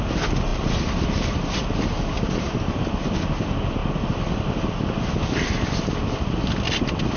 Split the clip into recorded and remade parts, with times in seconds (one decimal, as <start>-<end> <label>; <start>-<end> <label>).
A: 0.0-7.2 recorded